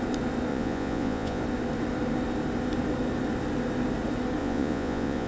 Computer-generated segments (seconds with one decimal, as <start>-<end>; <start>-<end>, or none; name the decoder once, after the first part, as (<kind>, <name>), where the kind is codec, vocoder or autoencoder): 0.5-1.4 (vocoder, Vocos); 4.4-5.3